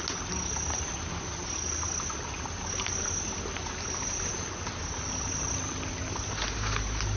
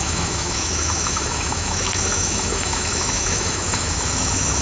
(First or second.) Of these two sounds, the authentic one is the first